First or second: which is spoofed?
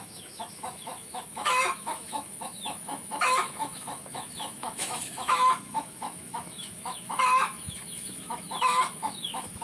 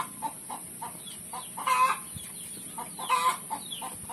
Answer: first